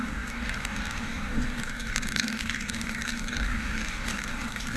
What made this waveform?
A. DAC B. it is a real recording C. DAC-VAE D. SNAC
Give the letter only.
A